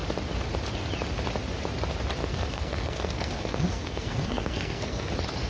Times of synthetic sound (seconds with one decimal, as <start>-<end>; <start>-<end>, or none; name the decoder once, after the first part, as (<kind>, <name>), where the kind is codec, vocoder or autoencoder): 2.2-5.1 (codec, SNAC)

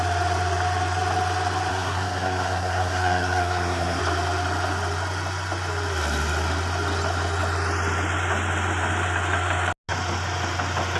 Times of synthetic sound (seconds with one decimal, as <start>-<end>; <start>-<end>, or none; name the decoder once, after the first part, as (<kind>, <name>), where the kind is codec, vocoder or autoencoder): 1.7-4.0 (codec, SNAC)